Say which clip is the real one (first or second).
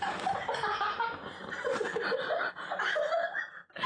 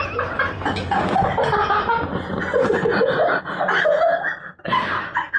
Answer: second